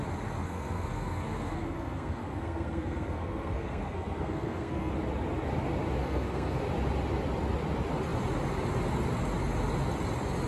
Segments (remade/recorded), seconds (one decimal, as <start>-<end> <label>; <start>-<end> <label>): 0.0-0.4 recorded; 0.4-4.9 remade; 4.9-6.0 recorded; 6.0-6.6 remade; 6.6-10.5 recorded